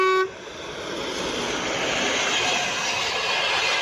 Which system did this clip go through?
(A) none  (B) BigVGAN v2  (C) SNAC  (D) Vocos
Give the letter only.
A